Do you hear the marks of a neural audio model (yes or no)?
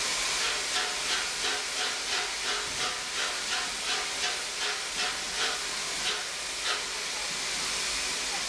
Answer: no